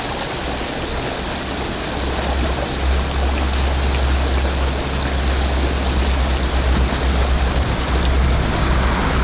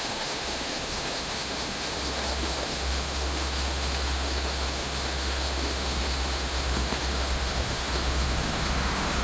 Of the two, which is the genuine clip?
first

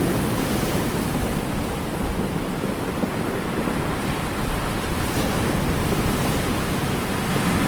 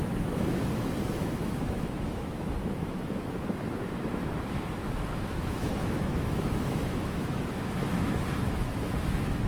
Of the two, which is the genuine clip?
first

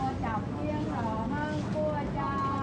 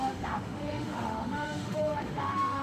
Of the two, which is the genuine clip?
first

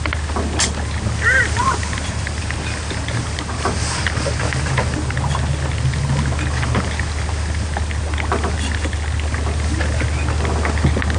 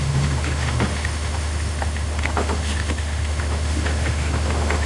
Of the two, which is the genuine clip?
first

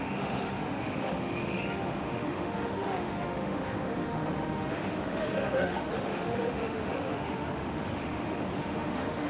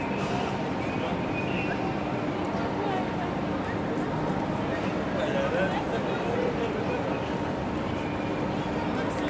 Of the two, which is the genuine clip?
second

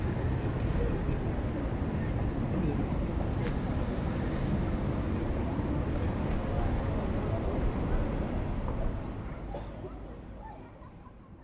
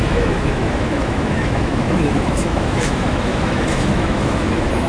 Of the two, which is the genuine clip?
first